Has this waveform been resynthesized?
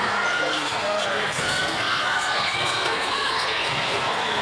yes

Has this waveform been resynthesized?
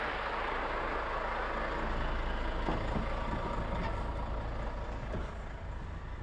no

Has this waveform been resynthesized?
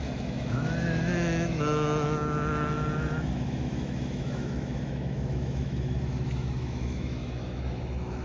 yes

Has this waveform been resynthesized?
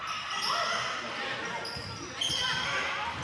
no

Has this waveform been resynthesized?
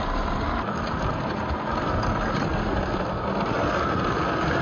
no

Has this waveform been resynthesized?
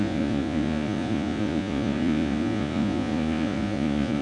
yes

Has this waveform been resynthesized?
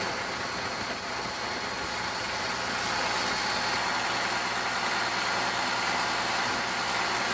no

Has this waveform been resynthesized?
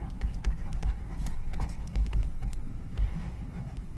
yes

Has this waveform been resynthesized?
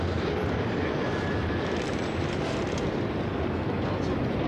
yes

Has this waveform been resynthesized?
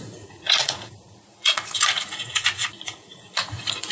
yes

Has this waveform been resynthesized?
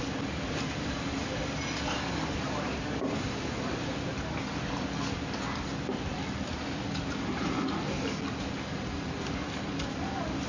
no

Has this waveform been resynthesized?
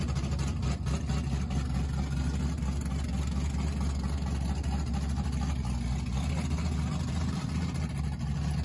no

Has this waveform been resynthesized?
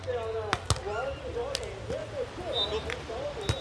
no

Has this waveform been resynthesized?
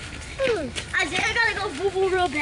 yes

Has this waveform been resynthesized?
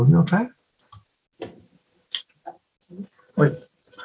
no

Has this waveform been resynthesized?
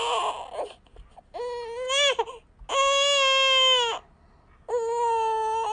no